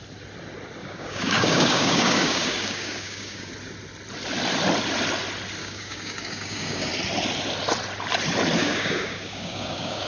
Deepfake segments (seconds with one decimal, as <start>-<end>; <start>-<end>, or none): 0.8-3.5; 5.6-6.9; 8.6-10.1